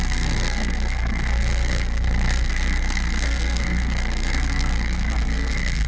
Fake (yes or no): yes